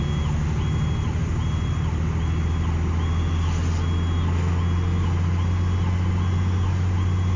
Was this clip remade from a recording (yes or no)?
no